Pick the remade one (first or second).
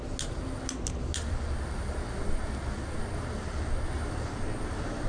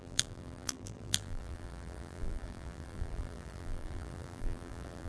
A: second